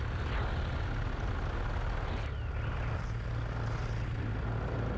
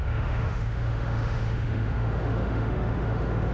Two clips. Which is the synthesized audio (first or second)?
second